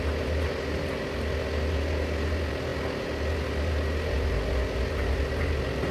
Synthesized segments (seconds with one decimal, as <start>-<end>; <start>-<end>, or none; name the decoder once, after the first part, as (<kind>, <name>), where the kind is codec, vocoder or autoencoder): none